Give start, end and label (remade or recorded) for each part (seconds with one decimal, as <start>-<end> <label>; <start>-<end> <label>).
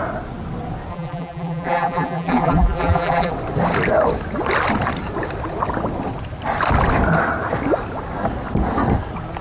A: 0.0-0.9 recorded; 0.9-3.3 remade; 3.3-9.4 recorded